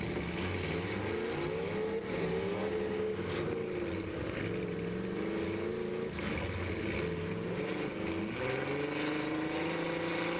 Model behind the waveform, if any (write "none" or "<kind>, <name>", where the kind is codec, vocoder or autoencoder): none